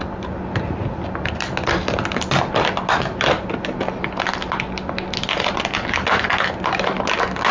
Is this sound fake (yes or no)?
no